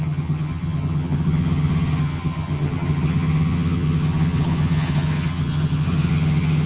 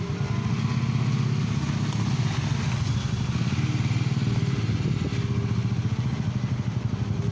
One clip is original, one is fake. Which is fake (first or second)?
first